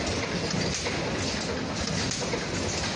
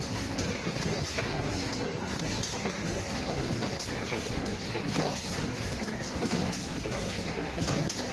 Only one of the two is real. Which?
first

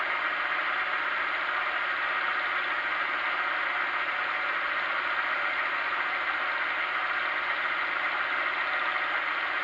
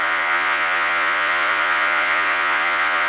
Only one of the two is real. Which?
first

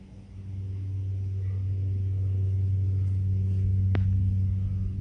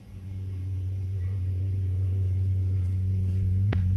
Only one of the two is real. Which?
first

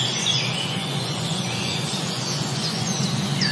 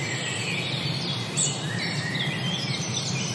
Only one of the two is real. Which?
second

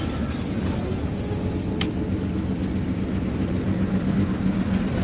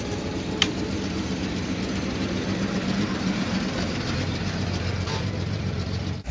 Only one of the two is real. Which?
first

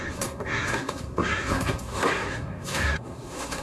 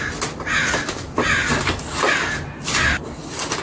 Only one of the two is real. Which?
second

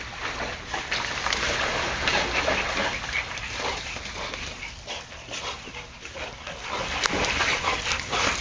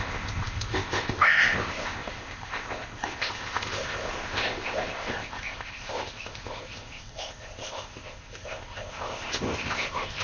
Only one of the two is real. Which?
first